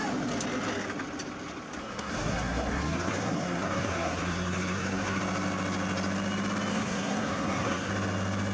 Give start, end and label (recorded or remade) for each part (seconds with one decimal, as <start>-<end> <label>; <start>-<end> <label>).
0.0-1.8 recorded; 1.8-5.2 remade; 5.2-6.7 recorded; 6.7-7.9 remade; 7.9-8.5 recorded